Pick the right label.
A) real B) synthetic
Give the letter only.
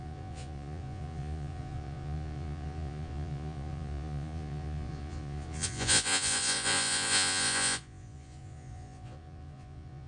B